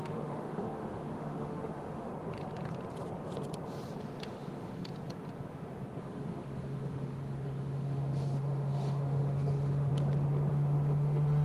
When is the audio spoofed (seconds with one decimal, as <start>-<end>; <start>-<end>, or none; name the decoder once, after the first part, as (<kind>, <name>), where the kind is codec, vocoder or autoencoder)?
0.0-2.1 (autoencoder, DAC-VAE); 4.2-4.8; 6.0-9.9; 10.5-11.4